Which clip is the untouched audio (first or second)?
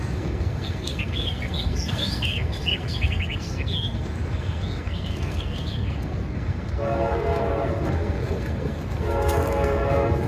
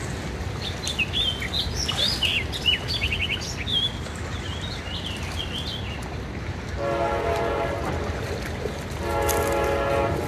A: second